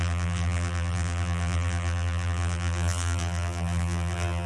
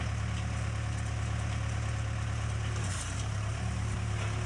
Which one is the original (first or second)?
second